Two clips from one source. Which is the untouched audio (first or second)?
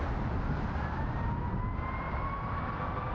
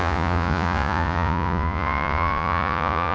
first